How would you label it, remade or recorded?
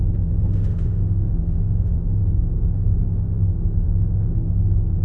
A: remade